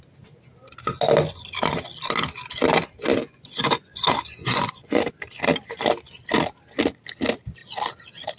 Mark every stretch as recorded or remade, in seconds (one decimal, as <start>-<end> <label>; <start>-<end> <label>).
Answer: 0.0-3.2 recorded; 3.2-4.0 remade; 4.0-4.4 recorded; 4.4-5.0 remade; 5.0-8.4 recorded